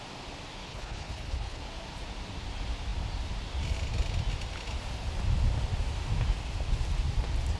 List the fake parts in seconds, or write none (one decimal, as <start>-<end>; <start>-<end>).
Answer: 0.6-1.6